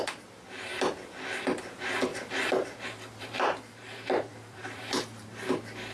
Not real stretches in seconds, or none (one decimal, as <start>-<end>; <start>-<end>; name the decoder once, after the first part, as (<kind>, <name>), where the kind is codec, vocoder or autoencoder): 2.1-5.5 (vocoder, BigVGAN v2)